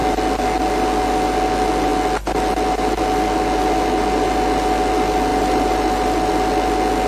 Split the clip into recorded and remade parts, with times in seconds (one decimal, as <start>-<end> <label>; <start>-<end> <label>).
0.0-1.9 recorded; 1.9-3.0 remade; 3.0-5.3 recorded; 5.3-6.3 remade; 6.3-7.1 recorded